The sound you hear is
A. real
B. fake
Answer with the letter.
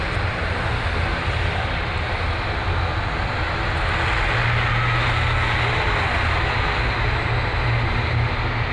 A